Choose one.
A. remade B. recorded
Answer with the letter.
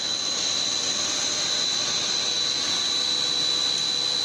B